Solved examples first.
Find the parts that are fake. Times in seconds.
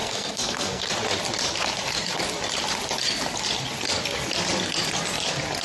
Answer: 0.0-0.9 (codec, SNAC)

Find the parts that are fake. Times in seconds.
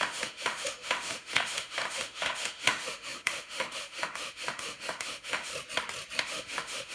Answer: 0.0-5.5 (autoencoder, DAC-VAE); 6.2-6.9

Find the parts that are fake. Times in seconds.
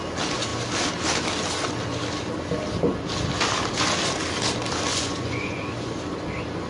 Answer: 4.9-5.6 (vocoder, Vocos)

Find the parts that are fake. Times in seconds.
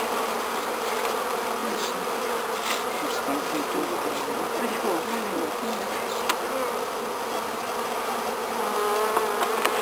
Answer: none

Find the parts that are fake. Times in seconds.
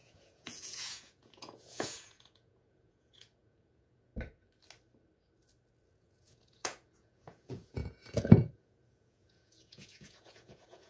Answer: 0.0-4.1 (vocoder, Vocos); 5.9-10.9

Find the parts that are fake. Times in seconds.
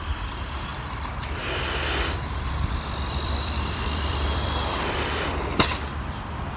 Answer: 0.0-0.7 (vocoder, BigVGAN v2); 1.4-6.6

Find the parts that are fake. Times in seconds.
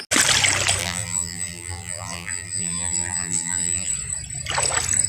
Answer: 0.8-3.9 (vocoder, BigVGAN v2)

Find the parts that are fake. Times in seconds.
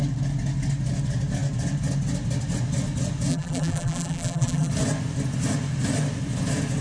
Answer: 3.3-4.7 (vocoder, BigVGAN v2)